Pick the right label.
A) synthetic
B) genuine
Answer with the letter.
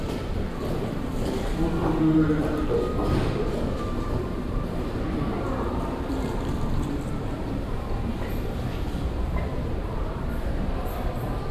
A